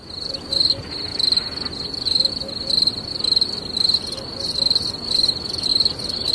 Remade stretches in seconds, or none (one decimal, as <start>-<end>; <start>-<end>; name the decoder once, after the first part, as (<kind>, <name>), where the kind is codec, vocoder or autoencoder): none